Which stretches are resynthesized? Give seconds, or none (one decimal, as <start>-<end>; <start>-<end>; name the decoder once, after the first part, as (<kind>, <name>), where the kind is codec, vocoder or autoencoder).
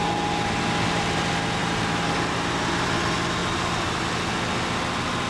1.6-2.1 (vocoder, BigVGAN v2); 3.4-4.0